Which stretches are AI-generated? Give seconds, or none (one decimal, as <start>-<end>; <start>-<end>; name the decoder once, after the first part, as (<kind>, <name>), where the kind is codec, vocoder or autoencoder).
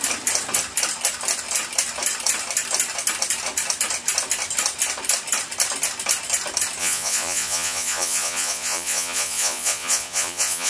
6.8-10.7 (vocoder, Vocos)